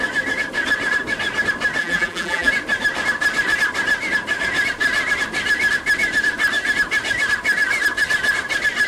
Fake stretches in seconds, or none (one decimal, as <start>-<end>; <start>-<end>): 1.8-2.5